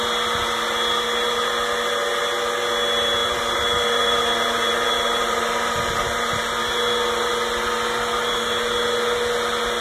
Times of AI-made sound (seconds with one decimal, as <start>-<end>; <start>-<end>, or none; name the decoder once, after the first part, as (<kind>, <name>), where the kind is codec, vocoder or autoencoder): 3.2-6.4 (vocoder, BigVGAN v2)